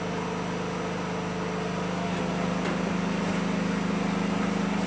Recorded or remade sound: recorded